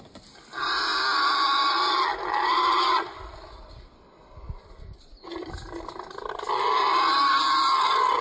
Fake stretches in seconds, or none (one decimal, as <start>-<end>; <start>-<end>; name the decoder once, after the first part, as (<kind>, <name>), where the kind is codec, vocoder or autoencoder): 0.9-5.5 (vocoder, BigVGAN v2)